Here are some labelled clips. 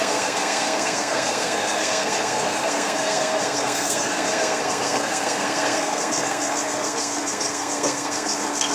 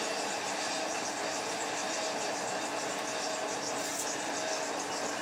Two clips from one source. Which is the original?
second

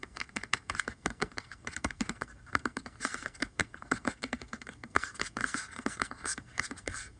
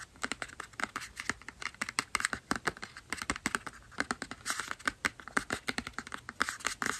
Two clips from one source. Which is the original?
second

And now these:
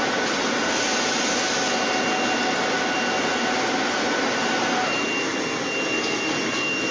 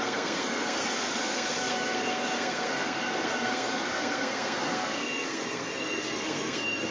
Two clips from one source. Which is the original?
first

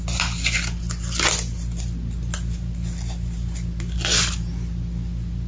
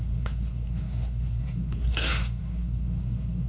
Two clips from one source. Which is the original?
first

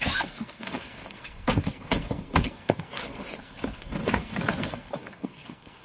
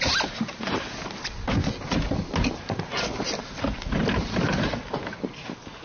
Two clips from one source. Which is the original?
second